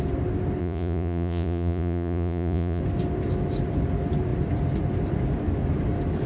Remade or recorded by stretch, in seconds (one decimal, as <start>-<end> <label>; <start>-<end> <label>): 0.0-0.6 recorded; 0.6-2.8 remade; 2.8-6.3 recorded